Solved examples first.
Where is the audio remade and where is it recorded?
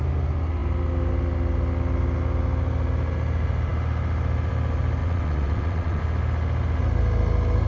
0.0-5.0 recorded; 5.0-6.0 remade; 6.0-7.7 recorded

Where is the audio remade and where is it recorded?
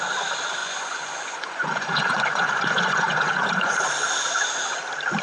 0.0-0.6 recorded; 0.6-3.7 remade; 3.7-5.2 recorded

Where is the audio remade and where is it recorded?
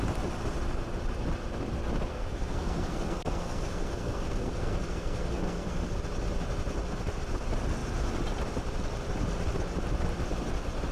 0.0-2.1 recorded; 2.1-6.0 remade; 6.0-10.9 recorded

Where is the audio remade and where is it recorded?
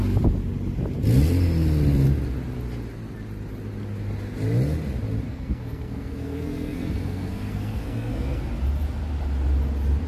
0.0-5.3 recorded; 5.3-8.5 remade; 8.5-10.1 recorded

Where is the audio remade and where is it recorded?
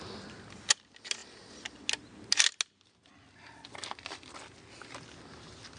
0.0-5.8 recorded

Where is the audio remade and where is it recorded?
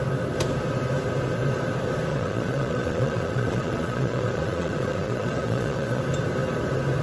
0.0-2.1 recorded; 2.1-6.0 remade; 6.0-7.0 recorded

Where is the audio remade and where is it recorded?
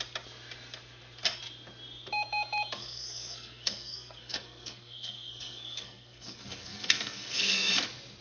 0.0-2.8 recorded; 2.8-7.7 remade; 7.7-8.2 recorded